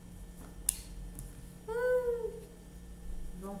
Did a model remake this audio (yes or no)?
no